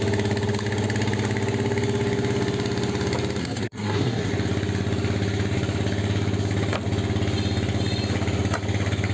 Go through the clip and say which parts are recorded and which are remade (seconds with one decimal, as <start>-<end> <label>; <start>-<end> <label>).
0.0-3.4 recorded; 3.4-4.3 remade; 4.3-9.1 recorded